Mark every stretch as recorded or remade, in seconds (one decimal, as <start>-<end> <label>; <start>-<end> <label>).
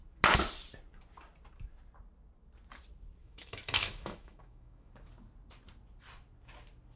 0.0-3.2 recorded; 3.2-4.9 remade; 4.9-7.0 recorded